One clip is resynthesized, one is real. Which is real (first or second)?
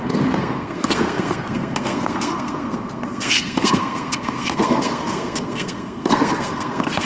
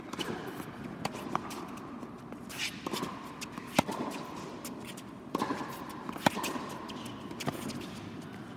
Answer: second